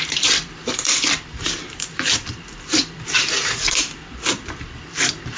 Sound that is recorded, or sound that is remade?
remade